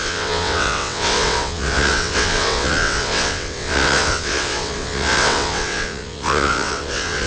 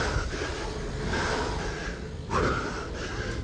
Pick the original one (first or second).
second